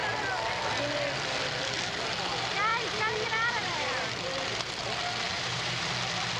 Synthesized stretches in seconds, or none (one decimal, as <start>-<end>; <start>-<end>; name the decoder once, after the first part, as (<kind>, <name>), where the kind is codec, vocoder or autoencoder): 2.7-4.7 (vocoder, BigVGAN v2); 5.3-5.9